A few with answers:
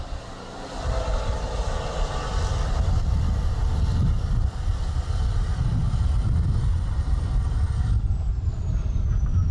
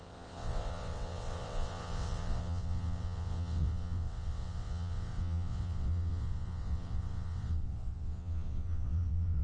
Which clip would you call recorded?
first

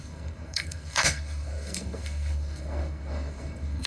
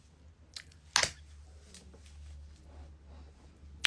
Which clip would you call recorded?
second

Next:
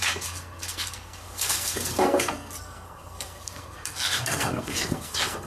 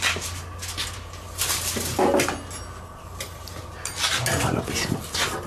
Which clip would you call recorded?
second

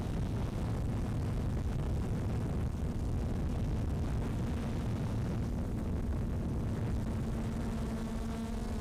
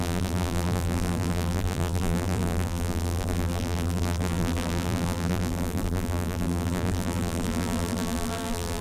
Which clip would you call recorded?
first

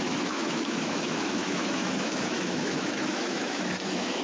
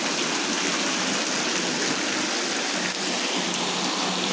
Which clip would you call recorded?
second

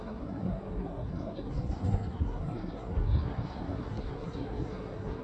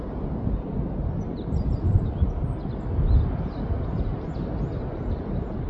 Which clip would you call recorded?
second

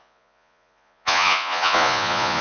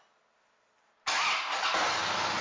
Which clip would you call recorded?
second